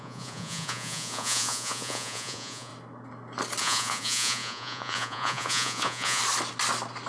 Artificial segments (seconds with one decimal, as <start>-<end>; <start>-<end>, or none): 0.0-2.7; 3.6-6.2

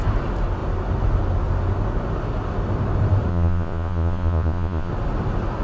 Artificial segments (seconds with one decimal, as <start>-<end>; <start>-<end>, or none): 3.3-4.9

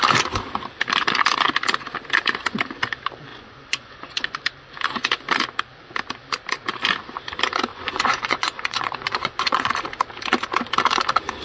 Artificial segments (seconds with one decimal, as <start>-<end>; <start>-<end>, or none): 3.3-4.5; 7.7-9.7